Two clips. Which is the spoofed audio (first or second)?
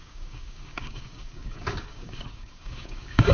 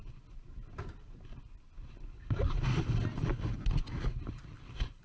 first